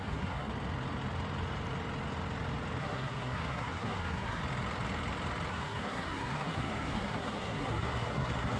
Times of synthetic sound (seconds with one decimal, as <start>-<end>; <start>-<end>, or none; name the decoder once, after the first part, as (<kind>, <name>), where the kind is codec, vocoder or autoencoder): 0.0-0.5 (codec, SNAC); 2.8-4.4; 5.5-8.6

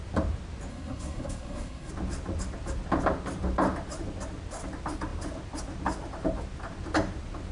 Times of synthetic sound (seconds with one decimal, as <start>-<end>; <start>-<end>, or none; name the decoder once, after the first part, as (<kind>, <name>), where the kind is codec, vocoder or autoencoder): 0.7-1.9 (codec, SNAC)